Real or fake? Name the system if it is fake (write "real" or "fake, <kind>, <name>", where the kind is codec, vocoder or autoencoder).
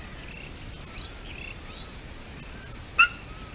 real